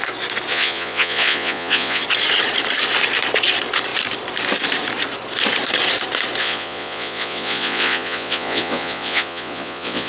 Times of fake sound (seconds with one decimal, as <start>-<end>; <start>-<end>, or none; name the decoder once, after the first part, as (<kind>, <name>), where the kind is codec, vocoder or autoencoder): 0.5-2.0 (vocoder, Vocos); 6.4-10.1